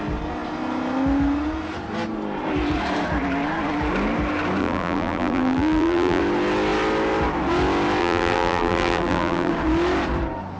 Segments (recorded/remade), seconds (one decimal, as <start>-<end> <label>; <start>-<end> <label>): 0.0-4.6 recorded; 4.6-6.2 remade; 6.2-8.0 recorded; 8.0-9.5 remade; 9.5-10.6 recorded